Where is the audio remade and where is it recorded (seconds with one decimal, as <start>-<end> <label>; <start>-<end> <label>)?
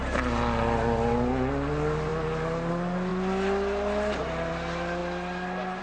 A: 0.0-5.8 recorded